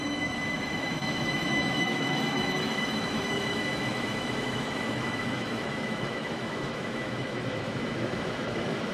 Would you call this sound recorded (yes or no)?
no